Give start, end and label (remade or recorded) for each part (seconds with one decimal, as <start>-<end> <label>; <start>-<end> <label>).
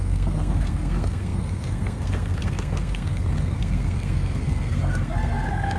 0.0-5.8 remade